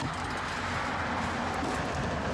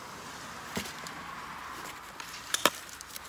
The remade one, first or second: second